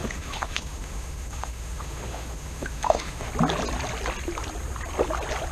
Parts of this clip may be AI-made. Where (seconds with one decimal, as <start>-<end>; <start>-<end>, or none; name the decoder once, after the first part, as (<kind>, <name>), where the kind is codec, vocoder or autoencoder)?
0.0-3.3 (autoencoder, DAC-VAE)